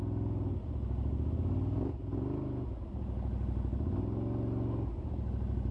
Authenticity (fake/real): real